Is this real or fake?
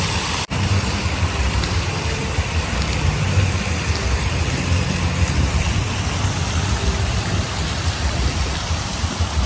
fake